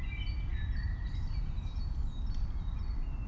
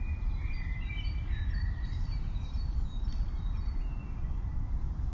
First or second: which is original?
first